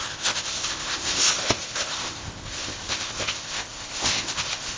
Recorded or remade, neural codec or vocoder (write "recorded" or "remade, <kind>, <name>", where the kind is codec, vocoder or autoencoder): remade, codec, ZipCodec